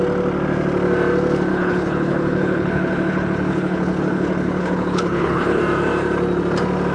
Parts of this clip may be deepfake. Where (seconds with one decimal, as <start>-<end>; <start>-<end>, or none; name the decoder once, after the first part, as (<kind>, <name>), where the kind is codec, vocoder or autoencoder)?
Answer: 1.5-5.6 (codec, HILCodec)